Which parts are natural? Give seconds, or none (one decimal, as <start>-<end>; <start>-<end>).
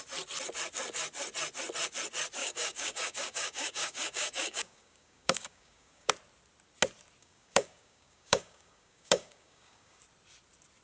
0.0-2.4; 6.1-7.2; 10.0-10.8